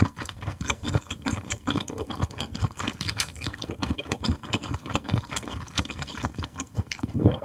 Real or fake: fake